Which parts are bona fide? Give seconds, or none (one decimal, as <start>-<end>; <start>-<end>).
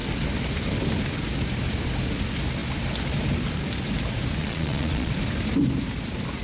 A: 0.0-4.4; 5.1-6.4